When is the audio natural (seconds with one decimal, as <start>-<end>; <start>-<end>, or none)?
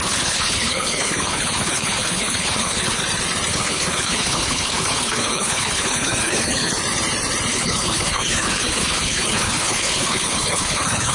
3.0-3.5; 6.8-7.5